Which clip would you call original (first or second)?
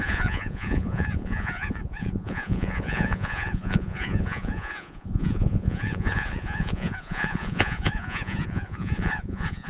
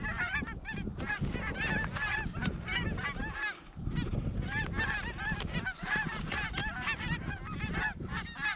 second